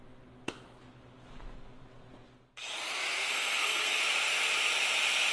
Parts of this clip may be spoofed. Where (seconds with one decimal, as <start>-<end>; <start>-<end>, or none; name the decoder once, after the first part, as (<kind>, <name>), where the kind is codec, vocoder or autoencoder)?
3.3-4.0 (codec, SNAC)